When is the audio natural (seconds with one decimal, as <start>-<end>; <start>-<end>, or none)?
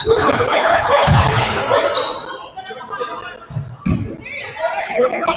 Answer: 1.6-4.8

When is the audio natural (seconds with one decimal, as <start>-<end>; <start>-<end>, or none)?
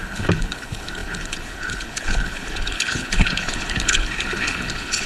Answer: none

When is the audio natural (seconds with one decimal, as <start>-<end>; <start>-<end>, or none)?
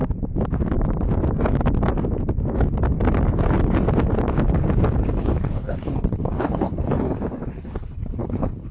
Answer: 0.0-5.2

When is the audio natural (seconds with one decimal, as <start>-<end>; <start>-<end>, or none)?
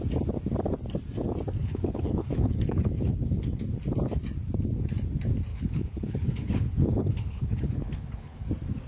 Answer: 0.0-1.6; 3.6-5.5; 8.5-8.9